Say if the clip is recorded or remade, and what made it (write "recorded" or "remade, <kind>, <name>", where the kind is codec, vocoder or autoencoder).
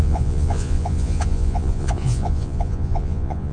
remade, vocoder, Vocos